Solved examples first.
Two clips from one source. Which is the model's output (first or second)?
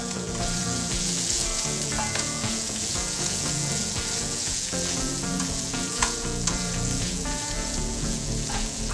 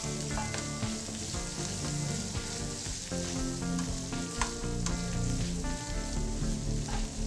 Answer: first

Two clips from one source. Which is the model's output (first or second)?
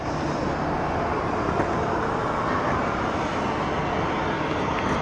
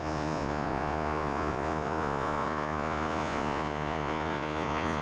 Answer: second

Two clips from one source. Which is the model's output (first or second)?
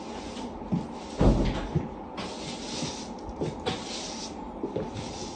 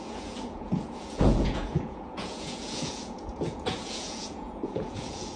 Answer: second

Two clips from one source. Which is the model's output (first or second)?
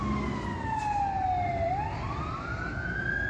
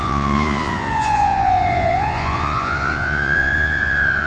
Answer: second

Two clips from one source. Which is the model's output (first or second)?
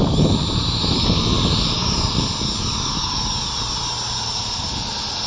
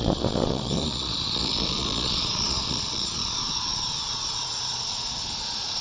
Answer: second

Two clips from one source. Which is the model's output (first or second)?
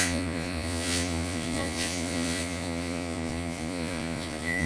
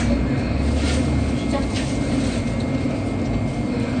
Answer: first